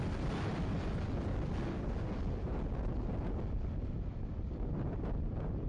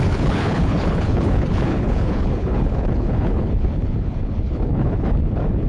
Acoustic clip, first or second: first